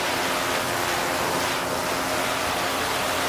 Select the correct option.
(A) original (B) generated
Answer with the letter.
A